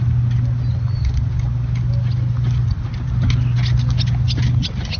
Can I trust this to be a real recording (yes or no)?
yes